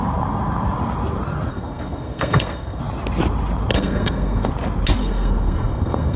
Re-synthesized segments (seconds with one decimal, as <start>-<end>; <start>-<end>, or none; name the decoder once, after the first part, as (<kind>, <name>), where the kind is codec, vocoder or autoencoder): 1.5-2.8 (codec, SNAC); 3.7-4.5; 5.0-6.2